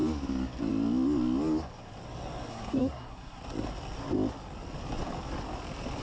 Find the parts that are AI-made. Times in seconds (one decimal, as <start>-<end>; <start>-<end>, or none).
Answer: 2.5-3.4